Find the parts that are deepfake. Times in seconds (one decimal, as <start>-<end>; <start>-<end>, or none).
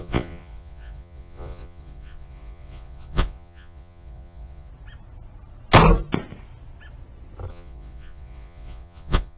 0.0-4.7; 7.5-9.4